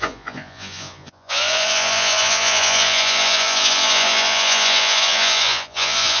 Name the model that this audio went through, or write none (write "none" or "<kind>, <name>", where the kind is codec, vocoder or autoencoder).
vocoder, Vocos